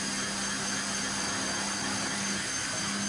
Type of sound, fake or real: real